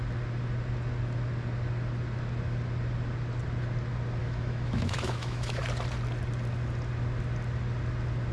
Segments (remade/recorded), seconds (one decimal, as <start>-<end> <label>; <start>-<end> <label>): 0.0-4.2 recorded; 4.2-5.6 remade; 5.6-8.3 recorded